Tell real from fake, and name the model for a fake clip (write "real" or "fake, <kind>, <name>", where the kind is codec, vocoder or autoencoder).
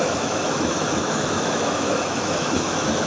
fake, autoencoder, DAC-VAE